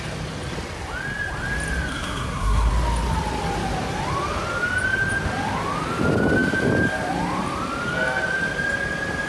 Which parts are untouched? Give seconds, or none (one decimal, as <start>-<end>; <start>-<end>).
0.0-1.9; 2.7-9.3